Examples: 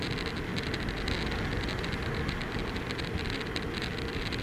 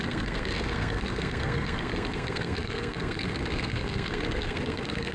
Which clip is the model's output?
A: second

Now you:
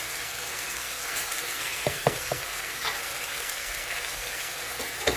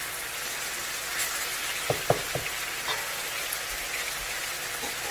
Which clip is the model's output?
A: first